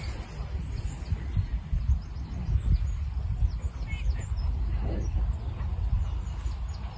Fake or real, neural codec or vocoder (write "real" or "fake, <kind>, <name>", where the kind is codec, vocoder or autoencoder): real